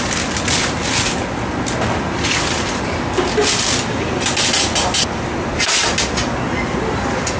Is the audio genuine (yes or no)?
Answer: yes